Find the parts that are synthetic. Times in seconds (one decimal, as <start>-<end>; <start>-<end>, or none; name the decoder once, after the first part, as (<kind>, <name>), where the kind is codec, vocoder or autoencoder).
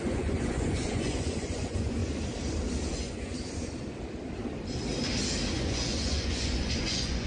0.0-2.0 (vocoder, Vocos); 2.9-3.3; 5.5-7.3